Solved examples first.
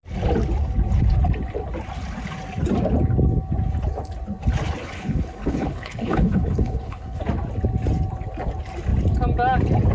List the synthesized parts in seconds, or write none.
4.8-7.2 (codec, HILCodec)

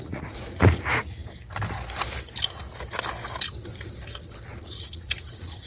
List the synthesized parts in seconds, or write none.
0.0-1.2 (vocoder, Vocos); 4.6-5.7

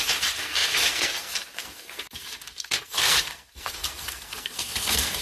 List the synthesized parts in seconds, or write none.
0.0-5.2 (codec, SNAC)

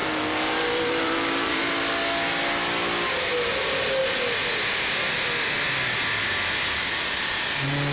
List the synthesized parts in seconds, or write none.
0.0-1.6 (vocoder, BigVGAN v2)

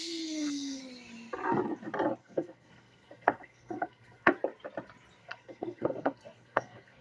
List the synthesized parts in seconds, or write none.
0.0-0.8 (codec, SNAC); 2.2-4.3; 5.2-7.0